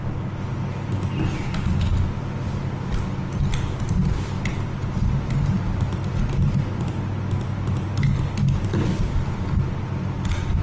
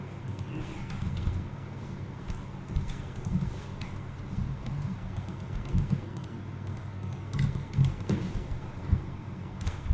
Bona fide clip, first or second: first